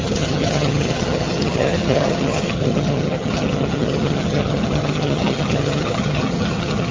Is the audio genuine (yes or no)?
no